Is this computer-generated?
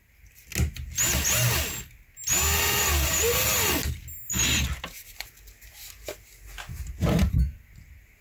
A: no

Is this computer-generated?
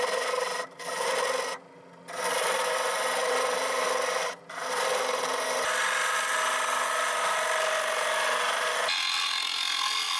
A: no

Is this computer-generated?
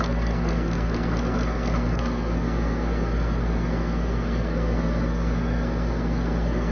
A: yes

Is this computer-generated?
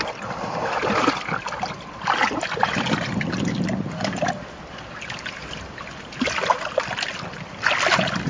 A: no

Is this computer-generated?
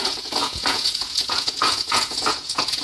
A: yes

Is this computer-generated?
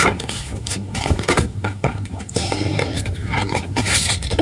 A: yes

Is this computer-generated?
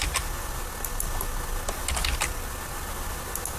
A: no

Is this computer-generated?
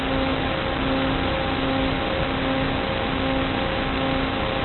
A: no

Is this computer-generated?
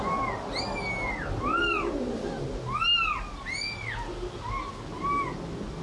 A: no